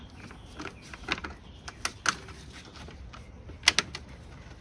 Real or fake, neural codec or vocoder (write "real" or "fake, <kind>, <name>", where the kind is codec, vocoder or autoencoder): real